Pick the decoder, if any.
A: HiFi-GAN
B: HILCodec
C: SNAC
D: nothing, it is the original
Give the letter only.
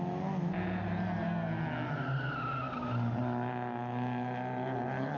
D